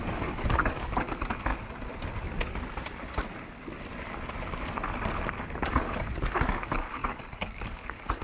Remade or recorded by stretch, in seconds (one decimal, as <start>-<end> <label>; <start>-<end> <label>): 0.0-1.5 remade; 1.5-5.5 recorded; 5.5-8.2 remade